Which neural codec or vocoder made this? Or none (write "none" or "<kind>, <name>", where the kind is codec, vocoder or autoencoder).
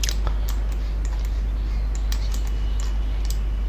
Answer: none